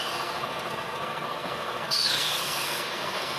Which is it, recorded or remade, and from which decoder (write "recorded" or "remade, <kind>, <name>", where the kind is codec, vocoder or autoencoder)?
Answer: remade, codec, SNAC